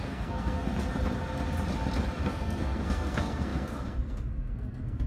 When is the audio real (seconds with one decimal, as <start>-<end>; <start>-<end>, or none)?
0.7-2.2